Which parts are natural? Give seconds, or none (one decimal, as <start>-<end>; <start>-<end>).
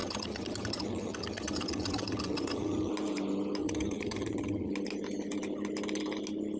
2.9-3.6; 4.7-6.6